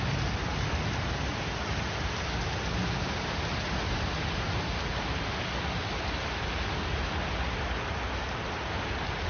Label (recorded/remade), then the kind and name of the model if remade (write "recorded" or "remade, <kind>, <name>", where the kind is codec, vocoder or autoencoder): recorded